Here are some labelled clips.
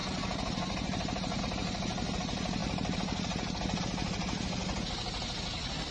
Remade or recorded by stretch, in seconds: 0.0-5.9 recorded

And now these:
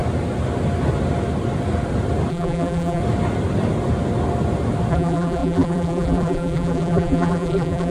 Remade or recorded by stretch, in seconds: 0.0-2.3 recorded; 2.3-3.0 remade; 3.0-4.9 recorded; 4.9-7.9 remade

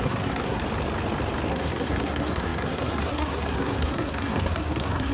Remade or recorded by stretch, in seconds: 0.0-0.6 remade; 0.6-1.5 recorded; 1.5-5.1 remade

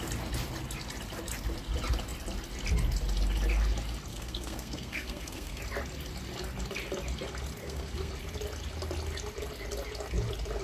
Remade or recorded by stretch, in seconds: 0.0-4.1 recorded; 4.1-5.6 remade; 5.6-7.6 recorded; 7.6-8.1 remade; 8.1-10.6 recorded

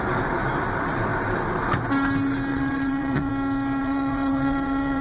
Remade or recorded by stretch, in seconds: 0.0-2.5 recorded; 2.5-3.3 remade; 3.3-3.8 recorded; 3.8-5.0 remade

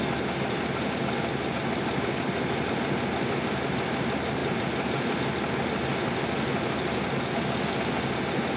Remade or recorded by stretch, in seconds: 0.0-8.6 recorded